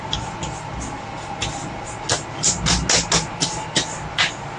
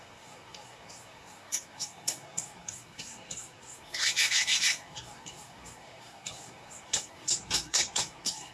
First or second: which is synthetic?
second